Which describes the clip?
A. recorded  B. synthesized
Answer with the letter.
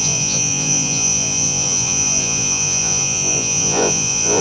B